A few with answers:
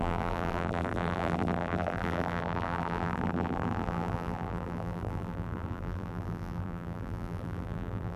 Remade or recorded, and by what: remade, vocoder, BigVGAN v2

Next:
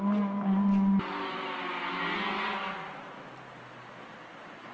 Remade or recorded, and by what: recorded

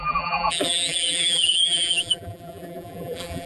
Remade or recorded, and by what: remade, vocoder, BigVGAN v2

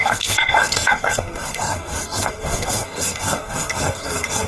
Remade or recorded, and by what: remade, codec, SNAC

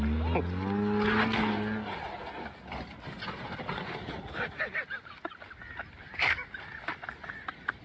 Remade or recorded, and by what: recorded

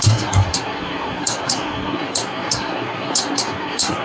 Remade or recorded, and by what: remade, codec, SNAC